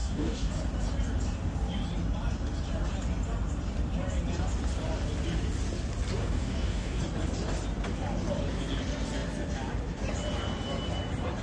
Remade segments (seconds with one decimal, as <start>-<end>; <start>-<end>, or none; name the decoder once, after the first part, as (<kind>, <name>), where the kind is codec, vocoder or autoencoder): 0.0-0.5 (codec, DAC); 6.2-7.0